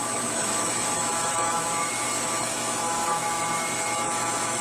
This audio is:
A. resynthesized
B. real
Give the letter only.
A